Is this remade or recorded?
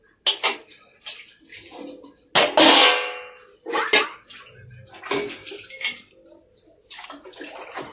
recorded